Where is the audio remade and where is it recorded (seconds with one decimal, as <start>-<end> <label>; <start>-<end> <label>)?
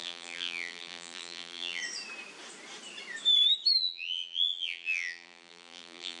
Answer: 0.0-1.8 remade; 1.8-3.8 recorded; 3.8-6.2 remade